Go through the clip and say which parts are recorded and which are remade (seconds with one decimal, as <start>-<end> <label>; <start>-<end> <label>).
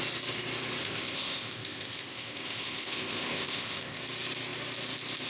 0.0-0.8 recorded; 0.8-4.0 remade; 4.0-5.3 recorded